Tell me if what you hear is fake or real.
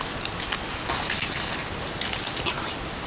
real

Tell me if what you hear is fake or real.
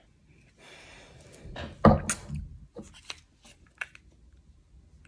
real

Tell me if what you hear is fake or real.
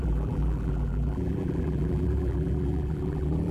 fake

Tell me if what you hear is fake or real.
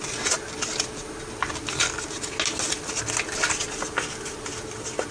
real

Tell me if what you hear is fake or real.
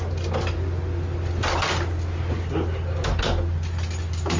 real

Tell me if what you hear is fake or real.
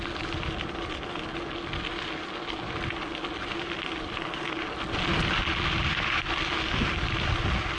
real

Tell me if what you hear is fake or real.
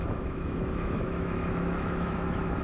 fake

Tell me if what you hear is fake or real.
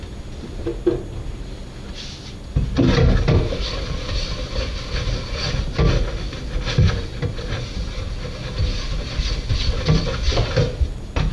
real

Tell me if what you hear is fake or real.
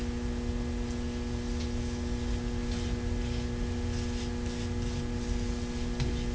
real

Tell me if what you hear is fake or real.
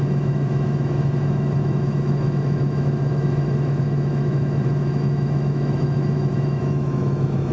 fake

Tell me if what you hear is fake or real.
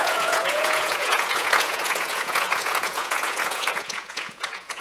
fake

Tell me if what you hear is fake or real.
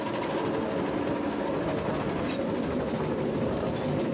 real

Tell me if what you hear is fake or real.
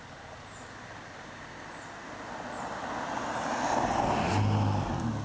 real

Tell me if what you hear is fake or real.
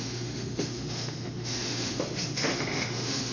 fake